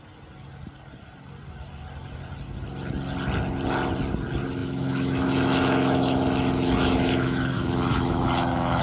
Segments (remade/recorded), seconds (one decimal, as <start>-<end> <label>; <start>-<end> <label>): 0.0-4.6 recorded; 4.6-8.8 remade